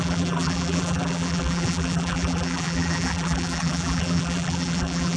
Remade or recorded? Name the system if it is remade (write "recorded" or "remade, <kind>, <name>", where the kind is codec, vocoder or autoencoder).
remade, vocoder, BigVGAN v2